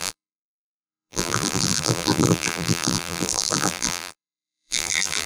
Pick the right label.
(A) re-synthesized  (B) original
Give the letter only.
A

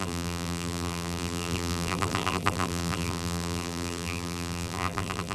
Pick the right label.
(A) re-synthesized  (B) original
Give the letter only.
A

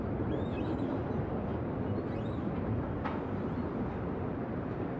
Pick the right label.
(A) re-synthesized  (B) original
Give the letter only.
A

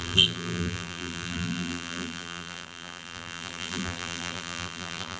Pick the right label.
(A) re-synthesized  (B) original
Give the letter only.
A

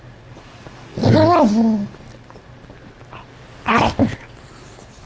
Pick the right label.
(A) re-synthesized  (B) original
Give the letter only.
B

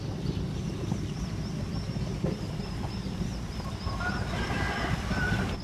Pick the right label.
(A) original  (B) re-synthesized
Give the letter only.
B